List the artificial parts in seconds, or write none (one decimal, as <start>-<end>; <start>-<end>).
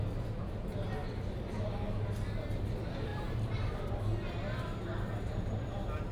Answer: 3.1-4.0